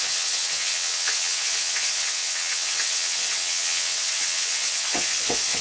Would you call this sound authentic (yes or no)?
no